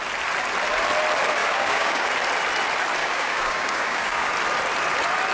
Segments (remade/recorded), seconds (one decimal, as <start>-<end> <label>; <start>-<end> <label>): 0.0-1.4 recorded; 1.4-2.1 remade; 2.1-3.0 recorded; 3.0-4.3 remade; 4.3-5.3 recorded